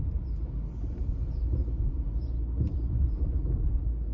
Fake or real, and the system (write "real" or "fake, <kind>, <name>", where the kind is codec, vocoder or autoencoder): fake, vocoder, BigVGAN v2